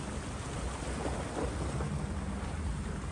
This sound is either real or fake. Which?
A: real